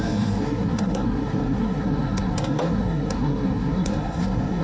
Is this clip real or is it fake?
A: fake